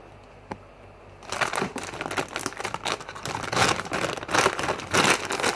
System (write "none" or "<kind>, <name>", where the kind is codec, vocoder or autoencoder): none